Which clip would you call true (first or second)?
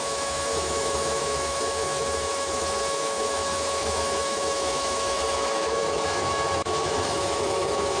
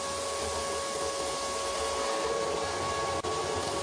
second